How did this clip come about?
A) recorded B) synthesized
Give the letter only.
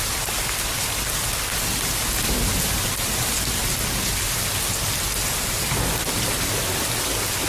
A